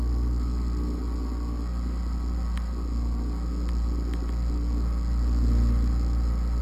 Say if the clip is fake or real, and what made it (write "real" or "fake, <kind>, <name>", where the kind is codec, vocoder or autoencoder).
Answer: real